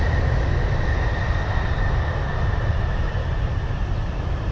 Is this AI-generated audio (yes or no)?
no